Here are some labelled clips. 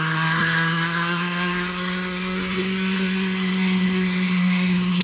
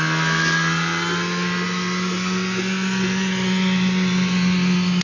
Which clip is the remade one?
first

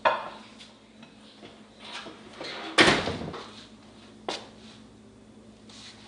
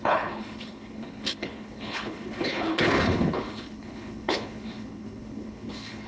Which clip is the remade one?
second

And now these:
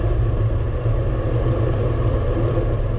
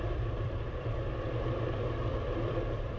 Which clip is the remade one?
second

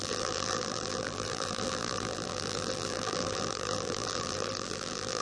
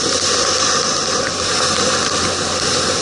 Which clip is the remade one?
first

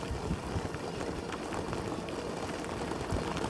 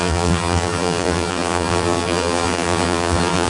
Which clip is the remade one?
second